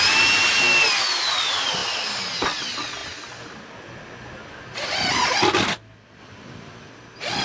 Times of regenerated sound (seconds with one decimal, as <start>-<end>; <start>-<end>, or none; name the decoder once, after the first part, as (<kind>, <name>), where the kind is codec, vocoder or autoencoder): none